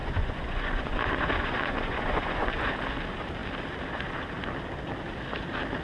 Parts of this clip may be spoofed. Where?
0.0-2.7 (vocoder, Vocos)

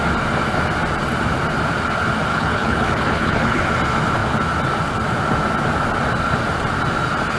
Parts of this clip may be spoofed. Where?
2.3-3.6 (codec, HILCodec)

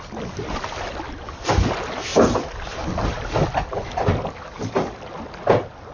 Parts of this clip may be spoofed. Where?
none